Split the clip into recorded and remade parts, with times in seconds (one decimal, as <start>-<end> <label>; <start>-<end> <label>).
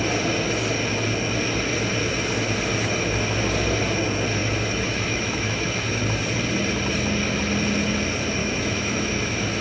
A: 0.0-4.4 recorded; 4.4-6.0 remade; 6.0-8.4 recorded; 8.4-9.6 remade